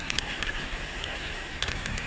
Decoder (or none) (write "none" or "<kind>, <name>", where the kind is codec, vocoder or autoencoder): codec, SNAC